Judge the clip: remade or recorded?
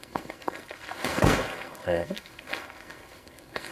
remade